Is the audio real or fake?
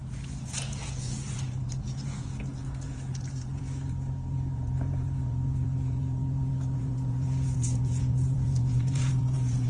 fake